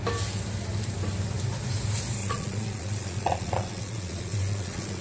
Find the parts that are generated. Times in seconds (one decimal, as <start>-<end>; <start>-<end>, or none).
2.2-5.0